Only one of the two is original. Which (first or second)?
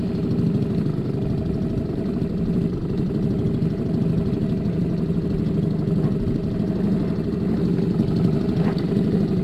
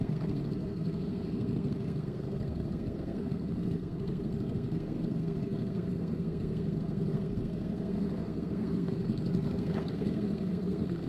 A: first